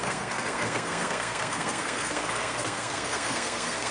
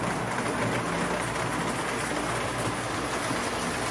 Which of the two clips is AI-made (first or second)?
first